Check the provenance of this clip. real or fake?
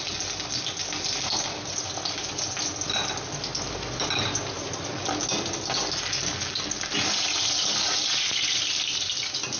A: real